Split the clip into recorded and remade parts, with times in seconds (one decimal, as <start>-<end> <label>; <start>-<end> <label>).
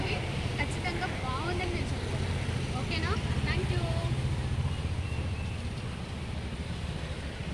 0.0-7.5 recorded